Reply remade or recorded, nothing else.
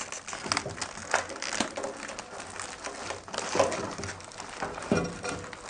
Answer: recorded